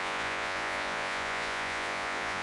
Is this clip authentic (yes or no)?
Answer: no